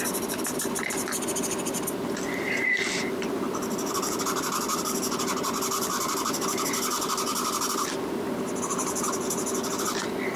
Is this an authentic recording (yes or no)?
yes